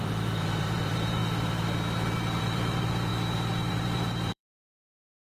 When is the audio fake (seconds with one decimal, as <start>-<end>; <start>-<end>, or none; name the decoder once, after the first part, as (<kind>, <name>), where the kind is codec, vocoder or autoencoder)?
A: 0.0-1.2 (vocoder, BigVGAN v2); 2.4-3.1; 3.7-5.3